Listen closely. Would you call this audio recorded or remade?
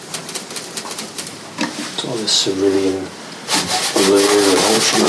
recorded